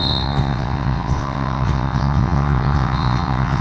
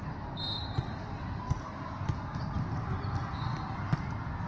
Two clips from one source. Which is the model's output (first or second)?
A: first